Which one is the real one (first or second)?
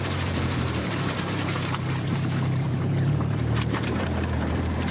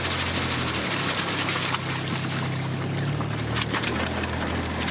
second